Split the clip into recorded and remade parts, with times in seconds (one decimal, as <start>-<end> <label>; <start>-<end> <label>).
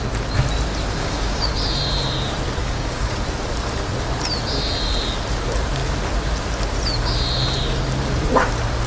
0.0-1.0 recorded; 1.0-1.5 remade; 1.5-2.6 recorded; 2.6-3.1 remade; 3.1-8.9 recorded